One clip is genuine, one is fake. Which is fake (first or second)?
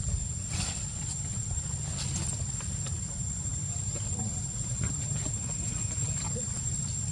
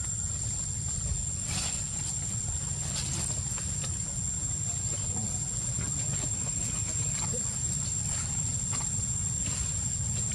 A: first